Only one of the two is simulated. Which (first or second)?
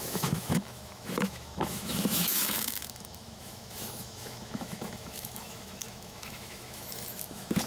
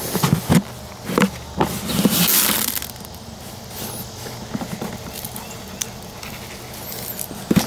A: first